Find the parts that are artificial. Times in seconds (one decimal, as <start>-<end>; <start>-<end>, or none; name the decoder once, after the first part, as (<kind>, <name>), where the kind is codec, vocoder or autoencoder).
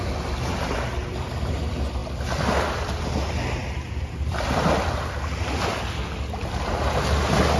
none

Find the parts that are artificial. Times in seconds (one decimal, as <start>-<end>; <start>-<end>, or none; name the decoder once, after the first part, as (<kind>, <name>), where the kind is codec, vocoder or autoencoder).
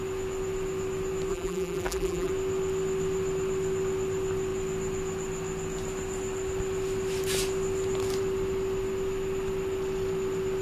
1.3-2.3 (vocoder, BigVGAN v2)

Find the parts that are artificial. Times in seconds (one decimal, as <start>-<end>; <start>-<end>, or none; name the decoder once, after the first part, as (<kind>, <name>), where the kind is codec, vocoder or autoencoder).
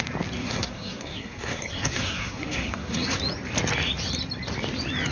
0.4-3.2 (codec, SNAC)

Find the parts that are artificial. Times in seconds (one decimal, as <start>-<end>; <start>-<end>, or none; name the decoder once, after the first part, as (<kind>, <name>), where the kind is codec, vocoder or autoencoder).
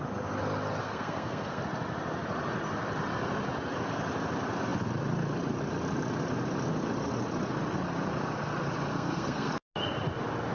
0.8-1.6 (codec, SNAC); 8.9-9.5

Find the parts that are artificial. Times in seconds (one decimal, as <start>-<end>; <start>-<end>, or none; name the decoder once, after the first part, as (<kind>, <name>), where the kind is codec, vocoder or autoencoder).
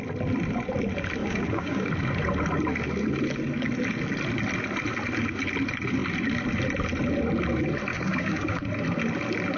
1.2-1.9 (codec, DAC); 7.9-8.6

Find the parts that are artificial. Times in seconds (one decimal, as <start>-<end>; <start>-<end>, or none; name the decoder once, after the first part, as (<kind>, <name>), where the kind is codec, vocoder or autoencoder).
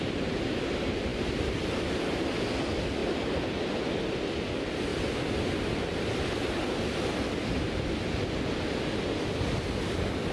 none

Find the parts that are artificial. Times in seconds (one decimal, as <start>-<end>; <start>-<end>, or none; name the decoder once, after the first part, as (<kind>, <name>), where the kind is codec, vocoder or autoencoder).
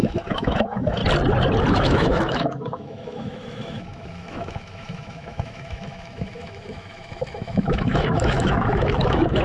0.0-1.0 (autoencoder, DAC-VAE); 1.7-9.4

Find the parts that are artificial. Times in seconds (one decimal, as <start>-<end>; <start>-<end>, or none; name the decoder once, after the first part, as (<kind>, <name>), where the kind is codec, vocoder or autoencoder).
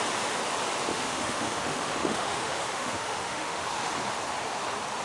0.9-3.9 (autoencoder, DAC-VAE)